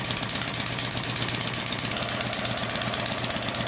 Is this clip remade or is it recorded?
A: recorded